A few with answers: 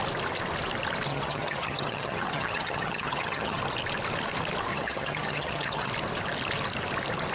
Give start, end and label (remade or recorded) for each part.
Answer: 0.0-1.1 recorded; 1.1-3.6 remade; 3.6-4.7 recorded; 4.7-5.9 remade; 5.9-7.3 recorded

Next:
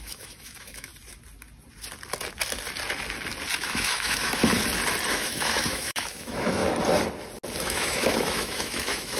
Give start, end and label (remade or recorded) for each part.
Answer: 0.0-0.9 remade; 0.9-3.6 recorded; 3.6-4.4 remade; 4.4-5.1 recorded; 5.1-6.6 remade; 6.6-7.6 recorded; 7.6-9.2 remade

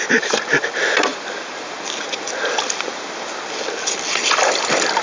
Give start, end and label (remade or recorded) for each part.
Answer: 0.0-5.0 recorded